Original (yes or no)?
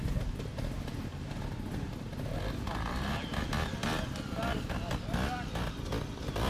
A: yes